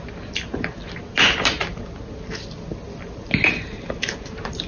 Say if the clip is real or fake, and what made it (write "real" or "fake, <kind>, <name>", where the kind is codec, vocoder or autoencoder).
real